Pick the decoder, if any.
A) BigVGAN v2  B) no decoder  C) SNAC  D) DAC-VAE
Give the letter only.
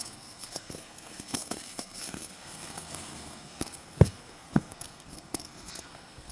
C